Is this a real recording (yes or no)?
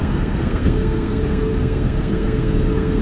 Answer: no